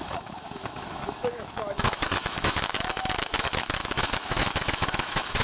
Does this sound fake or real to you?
fake